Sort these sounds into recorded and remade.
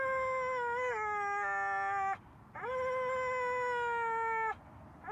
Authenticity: recorded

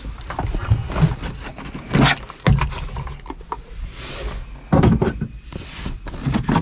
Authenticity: recorded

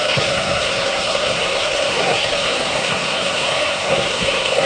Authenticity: remade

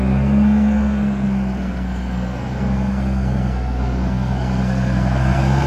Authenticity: remade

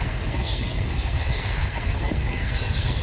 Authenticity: remade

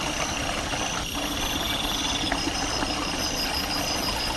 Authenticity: recorded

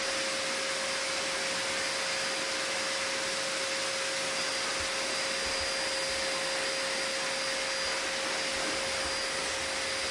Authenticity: recorded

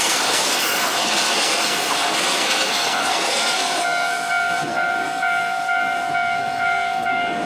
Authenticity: remade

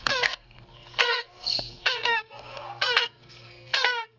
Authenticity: remade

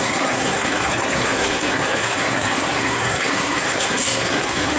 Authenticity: remade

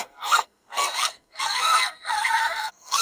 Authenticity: remade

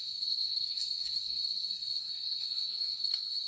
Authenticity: remade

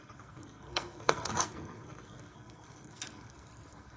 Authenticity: remade